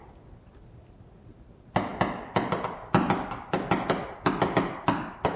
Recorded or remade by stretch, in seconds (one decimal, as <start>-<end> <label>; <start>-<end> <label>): 0.0-5.4 recorded